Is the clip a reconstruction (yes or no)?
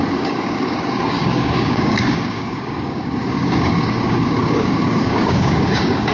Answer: yes